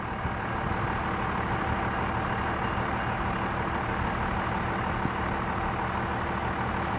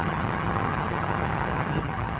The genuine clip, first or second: first